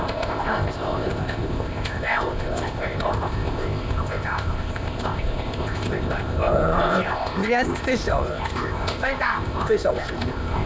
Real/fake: fake